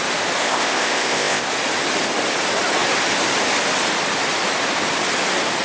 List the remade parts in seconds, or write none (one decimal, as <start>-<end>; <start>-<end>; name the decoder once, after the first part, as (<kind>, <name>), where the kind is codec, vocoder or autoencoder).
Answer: 0.4-1.5 (codec, ZipCodec)